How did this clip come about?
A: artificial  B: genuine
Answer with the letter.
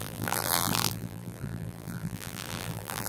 A